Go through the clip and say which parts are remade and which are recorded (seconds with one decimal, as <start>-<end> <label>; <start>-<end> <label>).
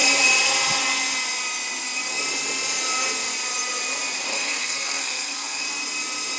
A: 0.0-4.3 recorded; 4.3-5.6 remade; 5.6-6.4 recorded